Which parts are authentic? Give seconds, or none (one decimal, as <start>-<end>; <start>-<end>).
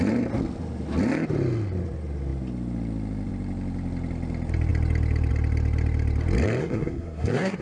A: 0.0-6.6